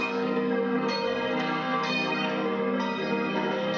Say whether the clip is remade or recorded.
remade